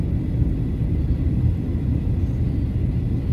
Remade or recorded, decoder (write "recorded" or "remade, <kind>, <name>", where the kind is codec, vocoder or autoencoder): recorded